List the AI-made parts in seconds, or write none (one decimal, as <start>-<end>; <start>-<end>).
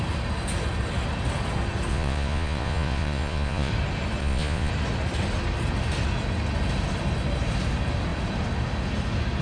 1.9-3.7; 4.2-4.7